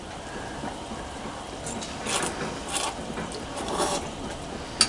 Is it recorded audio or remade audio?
recorded